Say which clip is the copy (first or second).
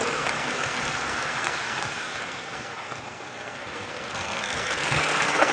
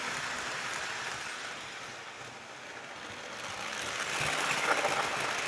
first